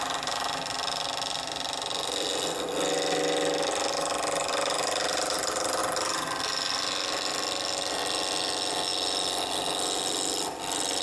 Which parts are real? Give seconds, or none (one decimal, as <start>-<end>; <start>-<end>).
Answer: 0.0-11.0